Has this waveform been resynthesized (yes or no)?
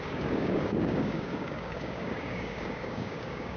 yes